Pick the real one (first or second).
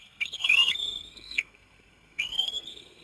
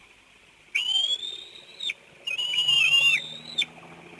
second